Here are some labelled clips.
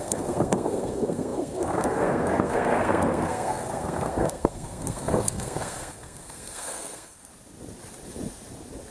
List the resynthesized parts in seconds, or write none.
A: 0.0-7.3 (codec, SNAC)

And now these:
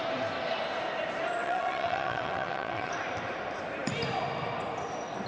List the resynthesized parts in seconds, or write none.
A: 1.4-2.9 (vocoder, WaveNeXt)

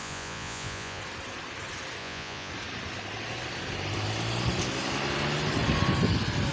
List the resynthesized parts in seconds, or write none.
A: 0.0-1.0 (vocoder, Vocos); 2.0-2.5

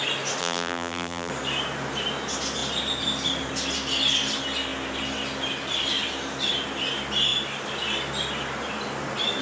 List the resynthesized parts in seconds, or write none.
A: 0.4-1.3 (vocoder, BigVGAN v2)